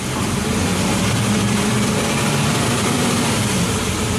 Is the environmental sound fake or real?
fake